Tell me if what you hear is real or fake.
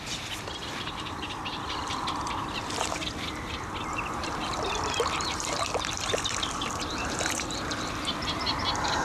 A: fake